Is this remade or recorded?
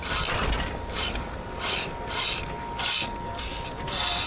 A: recorded